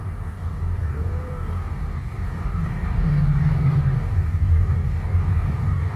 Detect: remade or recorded remade